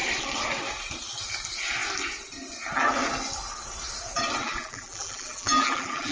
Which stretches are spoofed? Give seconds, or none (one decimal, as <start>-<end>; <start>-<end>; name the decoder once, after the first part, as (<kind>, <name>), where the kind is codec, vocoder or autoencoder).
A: 4.4-6.1 (vocoder, BigVGAN v2)